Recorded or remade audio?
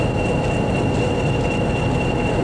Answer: recorded